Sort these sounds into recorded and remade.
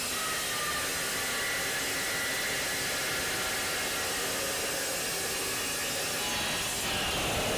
recorded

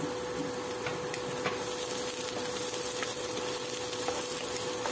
recorded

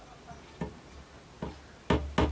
recorded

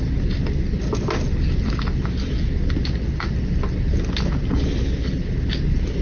recorded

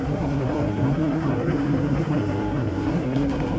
remade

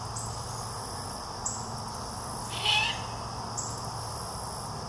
recorded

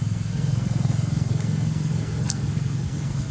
remade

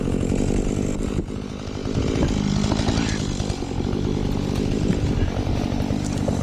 recorded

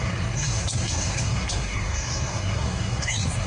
remade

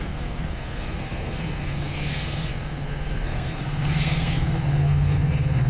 remade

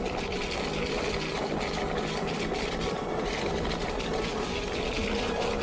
recorded